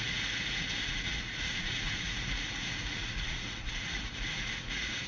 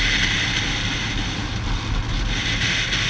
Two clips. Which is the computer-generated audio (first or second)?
first